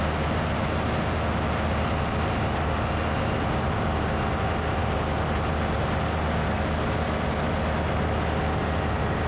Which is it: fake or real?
real